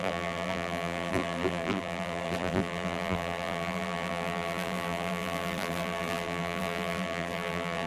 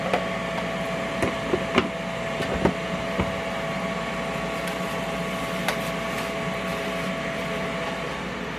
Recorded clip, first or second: second